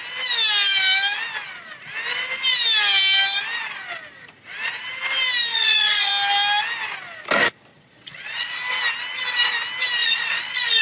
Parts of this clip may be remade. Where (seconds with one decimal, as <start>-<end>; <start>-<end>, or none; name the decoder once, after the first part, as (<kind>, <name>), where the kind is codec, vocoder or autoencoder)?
5.5-6.1 (vocoder, Vocos); 7.7-8.6; 10.0-10.8